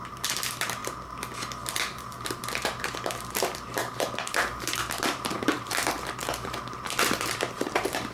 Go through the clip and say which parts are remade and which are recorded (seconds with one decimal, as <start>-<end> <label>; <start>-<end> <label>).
0.0-0.8 remade; 0.8-1.5 recorded; 1.5-6.2 remade; 6.2-7.0 recorded; 7.0-8.1 remade